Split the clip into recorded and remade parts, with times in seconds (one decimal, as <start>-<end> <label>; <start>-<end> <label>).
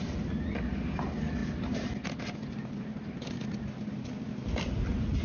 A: 0.0-5.2 recorded